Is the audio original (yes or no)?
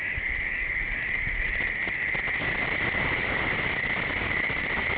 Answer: yes